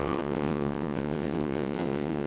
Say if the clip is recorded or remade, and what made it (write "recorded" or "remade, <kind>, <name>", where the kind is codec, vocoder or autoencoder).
remade, vocoder, WaveNeXt